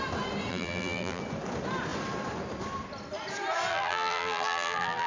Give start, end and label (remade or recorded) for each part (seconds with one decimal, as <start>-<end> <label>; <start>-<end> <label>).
0.0-0.5 recorded; 0.5-1.2 remade; 1.2-3.7 recorded; 3.7-5.1 remade